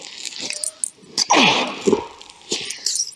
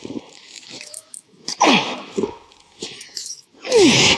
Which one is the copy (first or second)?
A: second